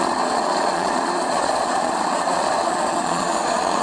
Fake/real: fake